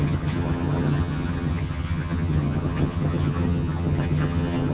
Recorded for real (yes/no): no